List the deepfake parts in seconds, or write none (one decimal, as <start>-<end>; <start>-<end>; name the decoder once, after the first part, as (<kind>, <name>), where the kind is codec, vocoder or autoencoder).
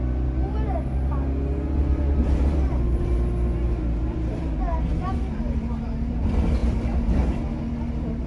none